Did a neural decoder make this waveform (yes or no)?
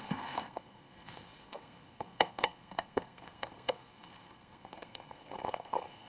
yes